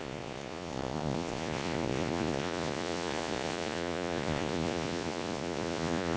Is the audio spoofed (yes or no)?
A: yes